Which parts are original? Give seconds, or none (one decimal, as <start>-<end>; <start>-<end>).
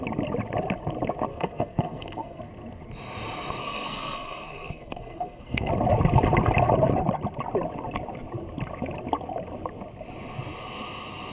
0.0-1.3; 2.4-3.6; 5.7-11.3